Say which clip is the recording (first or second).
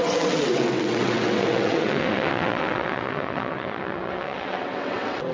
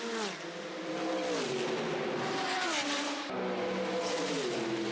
second